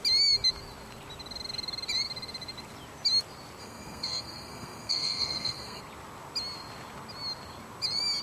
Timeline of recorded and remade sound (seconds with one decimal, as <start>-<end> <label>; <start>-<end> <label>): 0.0-3.6 recorded; 3.6-5.8 remade; 5.8-8.2 recorded

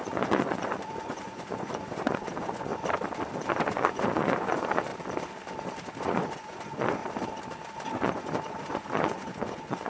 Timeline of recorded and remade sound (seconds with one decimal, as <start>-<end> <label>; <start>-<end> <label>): 0.0-2.7 remade; 2.7-3.5 recorded; 3.5-4.9 remade; 4.9-6.0 recorded; 6.0-7.0 remade; 7.0-7.9 recorded; 7.9-9.9 remade

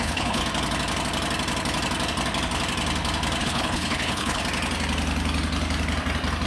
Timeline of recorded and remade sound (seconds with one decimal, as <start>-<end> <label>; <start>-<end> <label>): 0.0-0.4 remade; 0.4-3.4 recorded; 3.4-4.4 remade; 4.4-6.5 recorded

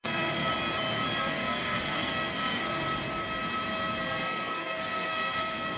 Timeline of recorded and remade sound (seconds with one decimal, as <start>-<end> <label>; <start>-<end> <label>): 0.0-0.5 remade; 0.5-1.2 recorded; 1.2-2.6 remade; 2.6-4.0 recorded; 4.0-5.8 remade